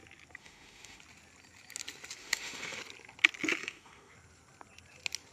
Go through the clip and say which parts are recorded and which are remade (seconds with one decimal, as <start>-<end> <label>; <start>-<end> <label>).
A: 0.0-0.4 recorded; 0.4-1.0 remade; 1.0-2.2 recorded; 2.2-2.8 remade; 2.8-3.6 recorded; 3.6-4.1 remade; 4.1-5.3 recorded

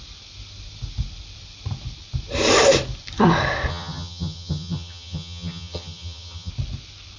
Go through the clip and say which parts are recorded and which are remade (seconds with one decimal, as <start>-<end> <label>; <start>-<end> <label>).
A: 0.0-3.7 recorded; 3.7-6.5 remade; 6.5-7.2 recorded

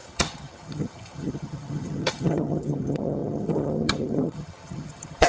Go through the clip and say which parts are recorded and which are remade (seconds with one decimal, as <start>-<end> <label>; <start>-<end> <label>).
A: 0.0-5.3 remade

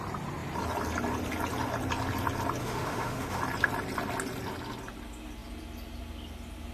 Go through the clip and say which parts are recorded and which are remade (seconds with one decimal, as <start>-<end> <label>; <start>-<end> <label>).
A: 0.0-2.6 recorded; 2.6-3.4 remade; 3.4-6.7 recorded

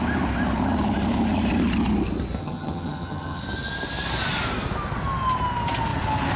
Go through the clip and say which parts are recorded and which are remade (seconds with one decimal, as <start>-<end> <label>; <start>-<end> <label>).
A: 0.0-2.4 recorded; 2.4-3.4 remade; 3.4-6.4 recorded